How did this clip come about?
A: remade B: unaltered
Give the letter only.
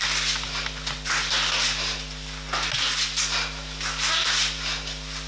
B